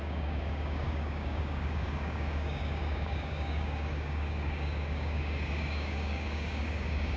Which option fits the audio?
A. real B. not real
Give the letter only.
B